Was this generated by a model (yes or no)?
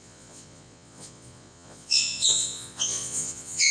yes